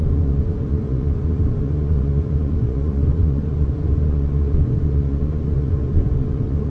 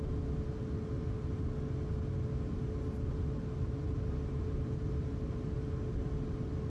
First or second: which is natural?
second